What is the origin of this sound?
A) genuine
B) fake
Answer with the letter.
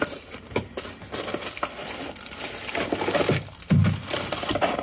A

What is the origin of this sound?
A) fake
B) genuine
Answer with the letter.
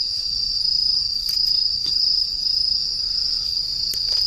B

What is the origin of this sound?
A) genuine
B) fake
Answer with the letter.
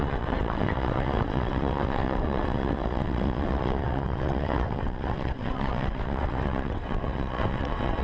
B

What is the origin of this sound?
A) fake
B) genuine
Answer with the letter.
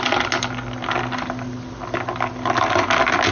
B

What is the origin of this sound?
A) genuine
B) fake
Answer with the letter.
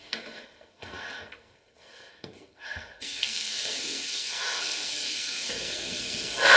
B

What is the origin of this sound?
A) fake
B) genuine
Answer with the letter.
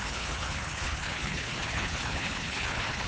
A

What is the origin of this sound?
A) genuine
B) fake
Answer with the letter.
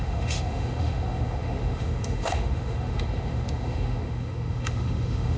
B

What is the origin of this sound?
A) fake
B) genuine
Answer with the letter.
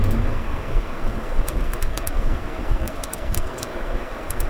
A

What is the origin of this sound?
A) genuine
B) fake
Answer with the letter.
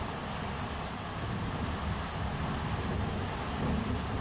A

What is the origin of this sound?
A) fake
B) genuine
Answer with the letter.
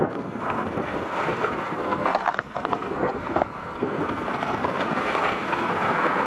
A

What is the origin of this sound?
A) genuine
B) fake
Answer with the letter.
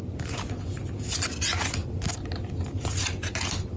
A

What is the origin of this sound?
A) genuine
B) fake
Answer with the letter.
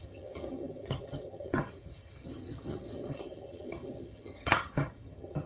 B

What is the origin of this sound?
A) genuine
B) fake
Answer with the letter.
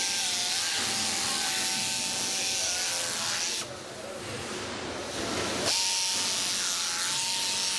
A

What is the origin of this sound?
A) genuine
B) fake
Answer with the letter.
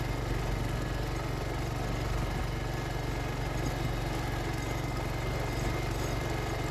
A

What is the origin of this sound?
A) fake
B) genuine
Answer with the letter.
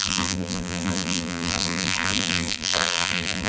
A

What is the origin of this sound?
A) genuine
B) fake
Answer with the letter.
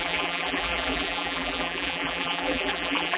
B